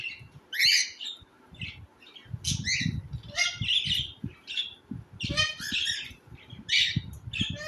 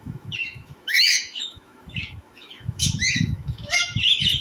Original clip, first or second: first